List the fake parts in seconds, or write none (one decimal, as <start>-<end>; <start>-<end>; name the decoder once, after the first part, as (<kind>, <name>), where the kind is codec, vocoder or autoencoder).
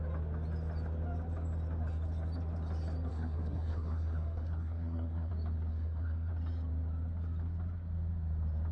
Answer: 3.1-5.3 (codec, SNAC); 5.7-6.3